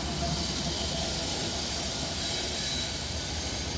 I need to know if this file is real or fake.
real